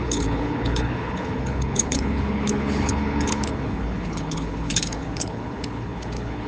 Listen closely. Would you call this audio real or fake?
fake